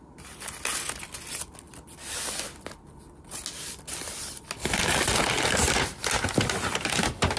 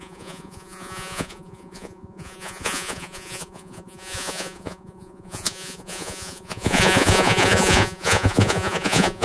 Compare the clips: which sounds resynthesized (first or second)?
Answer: second